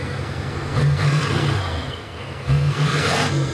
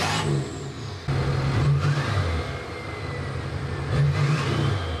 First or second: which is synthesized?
first